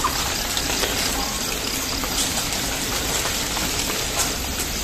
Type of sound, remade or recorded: recorded